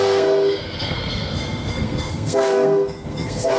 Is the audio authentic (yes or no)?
no